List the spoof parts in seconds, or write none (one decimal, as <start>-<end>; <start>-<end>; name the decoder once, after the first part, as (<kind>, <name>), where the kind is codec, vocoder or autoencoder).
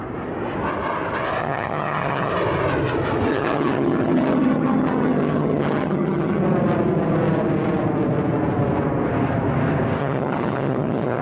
1.4-2.3 (vocoder, HiFi-GAN); 3.3-6.4; 10.0-11.2